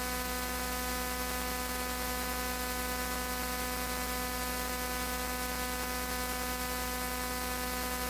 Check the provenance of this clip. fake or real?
real